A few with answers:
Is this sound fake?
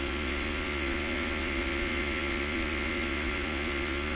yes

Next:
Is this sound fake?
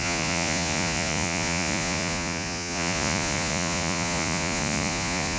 yes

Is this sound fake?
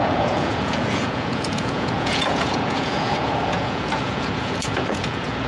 yes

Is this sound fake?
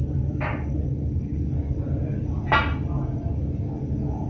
no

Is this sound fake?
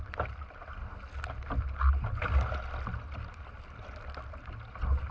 no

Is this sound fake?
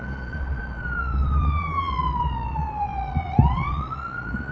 yes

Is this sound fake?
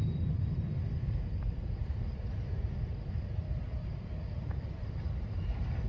no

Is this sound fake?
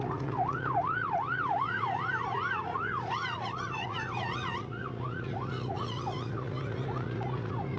yes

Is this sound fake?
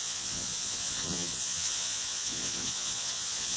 yes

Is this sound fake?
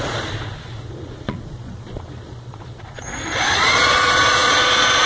yes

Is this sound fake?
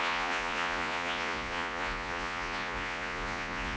yes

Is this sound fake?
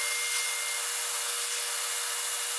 no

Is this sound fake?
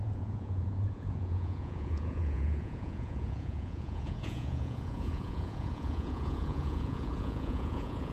yes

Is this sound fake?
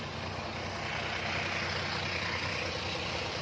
no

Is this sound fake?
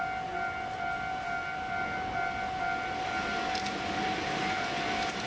no